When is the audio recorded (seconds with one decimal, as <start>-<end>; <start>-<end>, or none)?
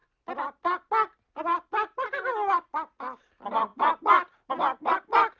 0.0-5.4